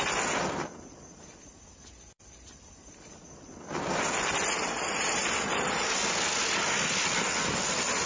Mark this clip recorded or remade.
recorded